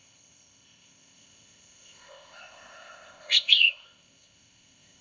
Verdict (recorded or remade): remade